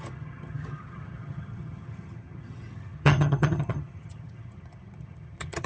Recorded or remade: remade